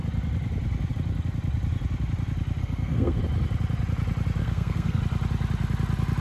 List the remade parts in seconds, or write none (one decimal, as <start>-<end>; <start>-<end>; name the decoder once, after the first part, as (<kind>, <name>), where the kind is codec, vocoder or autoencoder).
2.6-3.2 (codec, SNAC); 4.4-5.0